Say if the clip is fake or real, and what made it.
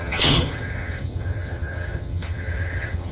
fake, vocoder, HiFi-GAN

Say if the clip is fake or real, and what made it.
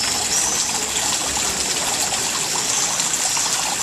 real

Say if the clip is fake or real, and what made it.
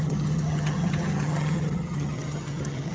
fake, vocoder, HiFi-GAN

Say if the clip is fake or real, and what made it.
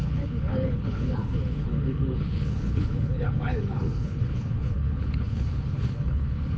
fake, codec, HILCodec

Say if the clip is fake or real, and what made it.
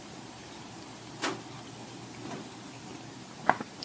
real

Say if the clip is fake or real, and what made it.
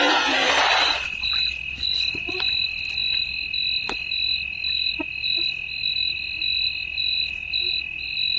real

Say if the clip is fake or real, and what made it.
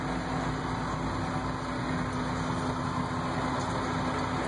real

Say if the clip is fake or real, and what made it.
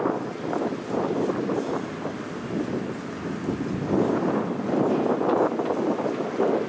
real